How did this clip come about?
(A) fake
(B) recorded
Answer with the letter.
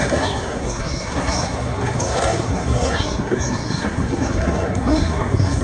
A